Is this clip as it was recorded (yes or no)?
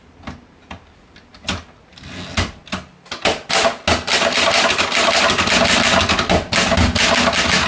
yes